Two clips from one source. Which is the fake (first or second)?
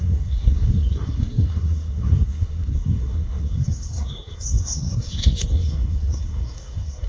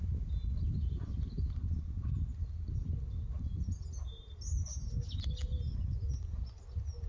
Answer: first